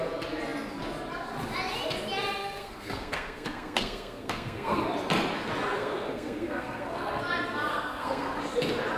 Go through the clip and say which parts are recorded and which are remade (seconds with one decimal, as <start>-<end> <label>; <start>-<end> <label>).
0.0-2.4 recorded; 2.4-4.8 remade; 4.8-5.8 recorded; 5.8-7.2 remade; 7.2-7.7 recorded; 7.7-8.4 remade; 8.4-9.0 recorded